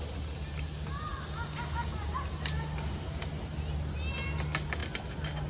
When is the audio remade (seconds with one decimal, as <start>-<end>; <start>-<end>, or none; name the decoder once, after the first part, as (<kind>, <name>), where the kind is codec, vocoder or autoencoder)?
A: none